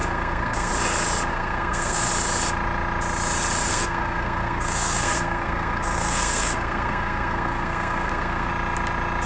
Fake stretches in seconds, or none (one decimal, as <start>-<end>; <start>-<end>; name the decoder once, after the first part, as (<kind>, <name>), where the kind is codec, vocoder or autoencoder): 0.0-0.7 (codec, SNAC); 1.3-2.1; 3.7-8.5